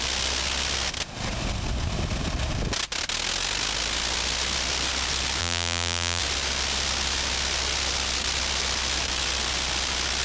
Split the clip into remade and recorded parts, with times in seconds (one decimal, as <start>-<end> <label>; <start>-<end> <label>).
0.0-5.4 recorded; 5.4-6.2 remade; 6.2-10.2 recorded